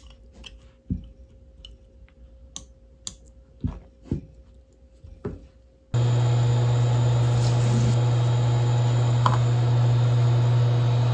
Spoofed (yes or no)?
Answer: no